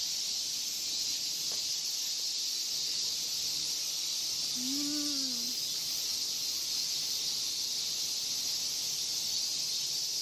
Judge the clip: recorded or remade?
recorded